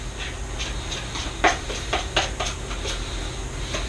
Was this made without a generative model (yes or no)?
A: yes